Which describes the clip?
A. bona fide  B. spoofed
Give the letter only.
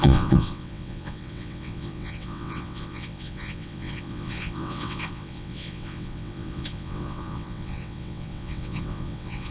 B